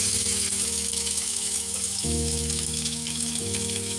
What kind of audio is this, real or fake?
fake